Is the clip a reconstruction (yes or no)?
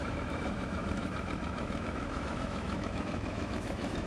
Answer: yes